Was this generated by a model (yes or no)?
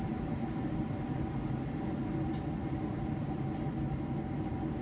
no